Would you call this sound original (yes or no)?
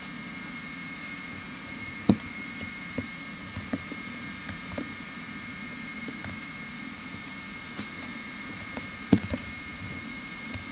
no